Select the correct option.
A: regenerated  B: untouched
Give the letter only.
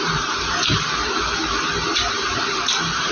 A